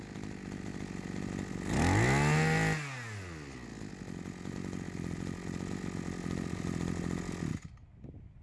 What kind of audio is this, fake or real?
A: real